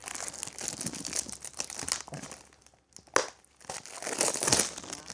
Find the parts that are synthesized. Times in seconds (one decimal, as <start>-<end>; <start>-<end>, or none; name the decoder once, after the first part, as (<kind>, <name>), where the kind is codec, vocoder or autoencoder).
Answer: none